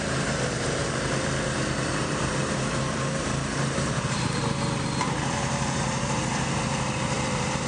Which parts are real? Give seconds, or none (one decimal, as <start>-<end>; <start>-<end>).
0.8-1.9